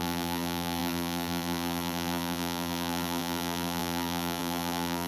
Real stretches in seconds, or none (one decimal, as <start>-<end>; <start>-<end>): none